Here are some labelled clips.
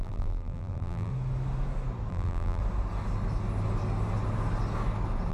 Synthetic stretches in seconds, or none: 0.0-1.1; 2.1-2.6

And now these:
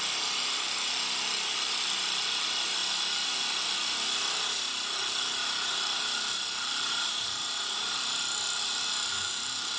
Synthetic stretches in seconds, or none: none

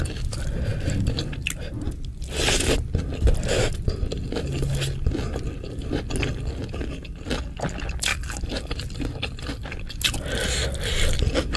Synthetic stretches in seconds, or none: none

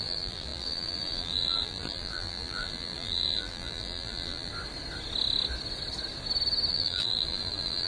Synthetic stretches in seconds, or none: 0.0-4.5; 6.7-7.9

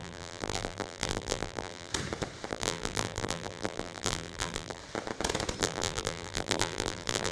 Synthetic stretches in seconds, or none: 0.0-1.9; 2.5-4.8; 5.6-7.3

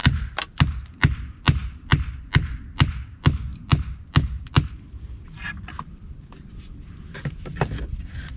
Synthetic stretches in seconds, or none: 0.0-0.6